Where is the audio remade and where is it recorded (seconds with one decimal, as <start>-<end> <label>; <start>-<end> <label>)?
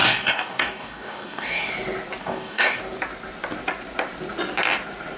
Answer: 0.0-1.7 remade; 1.7-2.2 recorded; 2.2-2.8 remade; 2.8-5.2 recorded